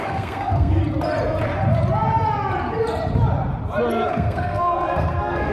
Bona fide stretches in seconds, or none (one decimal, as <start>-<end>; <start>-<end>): 0.8-4.1